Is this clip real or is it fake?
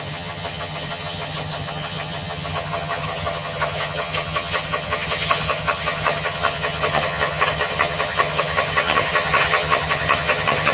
fake